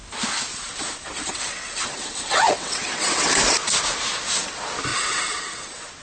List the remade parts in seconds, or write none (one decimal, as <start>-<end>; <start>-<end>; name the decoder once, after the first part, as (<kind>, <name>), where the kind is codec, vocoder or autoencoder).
0.5-3.4 (vocoder, WaveNeXt); 4.9-6.0

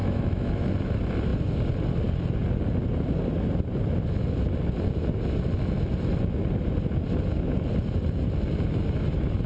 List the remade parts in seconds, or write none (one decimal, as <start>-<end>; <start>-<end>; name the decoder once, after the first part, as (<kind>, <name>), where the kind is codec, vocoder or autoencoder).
0.0-0.7 (autoencoder, DAC-VAE)

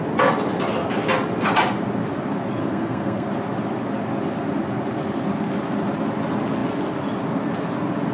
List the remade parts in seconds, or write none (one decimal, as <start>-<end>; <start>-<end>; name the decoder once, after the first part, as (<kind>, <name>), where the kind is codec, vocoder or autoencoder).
2.6-3.3 (codec, SNAC)

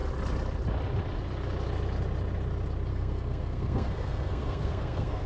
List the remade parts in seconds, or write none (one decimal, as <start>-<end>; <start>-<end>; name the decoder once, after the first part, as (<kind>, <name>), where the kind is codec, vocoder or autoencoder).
2.9-5.3 (codec, SNAC)

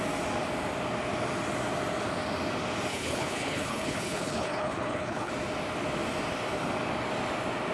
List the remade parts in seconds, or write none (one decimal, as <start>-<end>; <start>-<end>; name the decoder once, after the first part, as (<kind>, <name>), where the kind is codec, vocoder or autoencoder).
2.9-5.3 (codec, HILCodec)

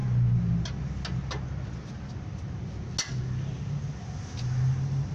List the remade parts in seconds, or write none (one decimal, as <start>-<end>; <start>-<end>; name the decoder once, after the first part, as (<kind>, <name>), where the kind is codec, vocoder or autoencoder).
none